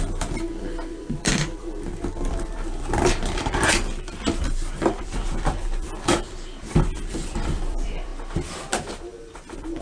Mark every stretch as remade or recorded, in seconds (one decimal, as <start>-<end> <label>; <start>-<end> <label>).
0.0-8.1 remade; 8.1-8.9 recorded; 8.9-9.8 remade